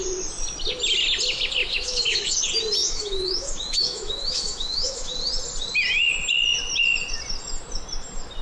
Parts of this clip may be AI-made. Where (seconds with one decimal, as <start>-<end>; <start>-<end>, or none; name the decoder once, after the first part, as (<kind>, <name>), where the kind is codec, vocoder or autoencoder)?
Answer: 1.6-2.4 (autoencoder, DAC-VAE); 2.8-5.1